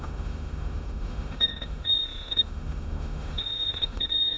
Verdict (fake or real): fake